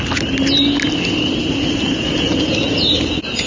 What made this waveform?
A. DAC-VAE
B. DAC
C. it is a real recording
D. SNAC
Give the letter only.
C